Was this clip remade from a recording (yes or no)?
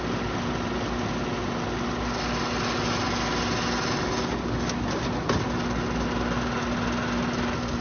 no